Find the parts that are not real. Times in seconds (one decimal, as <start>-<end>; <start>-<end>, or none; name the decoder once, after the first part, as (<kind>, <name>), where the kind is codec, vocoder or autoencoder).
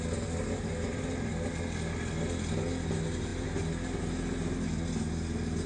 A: none